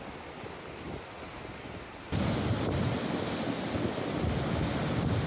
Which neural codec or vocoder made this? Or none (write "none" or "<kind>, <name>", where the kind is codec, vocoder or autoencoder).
none